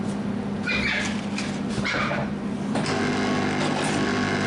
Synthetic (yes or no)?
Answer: no